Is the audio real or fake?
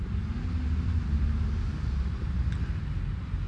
real